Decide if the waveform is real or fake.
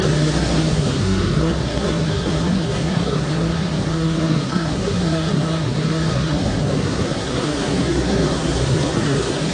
fake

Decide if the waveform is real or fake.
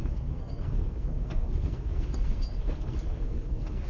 fake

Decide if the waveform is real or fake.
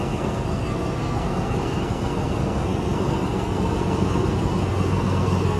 fake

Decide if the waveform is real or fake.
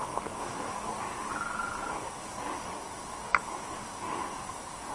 fake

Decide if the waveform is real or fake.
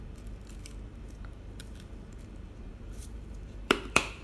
fake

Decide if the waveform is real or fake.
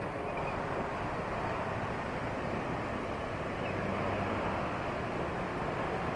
real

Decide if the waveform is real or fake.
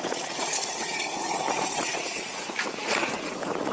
fake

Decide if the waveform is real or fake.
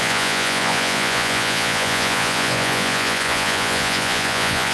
fake